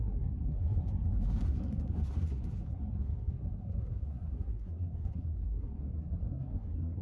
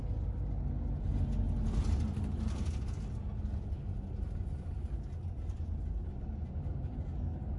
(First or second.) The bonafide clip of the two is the second